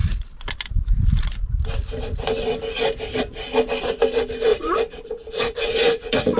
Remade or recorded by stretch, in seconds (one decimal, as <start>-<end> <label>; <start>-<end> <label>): 0.0-4.5 recorded; 4.5-6.4 remade